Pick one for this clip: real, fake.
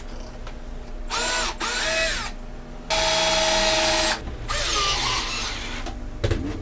real